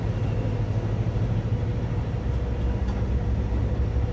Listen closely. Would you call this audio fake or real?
real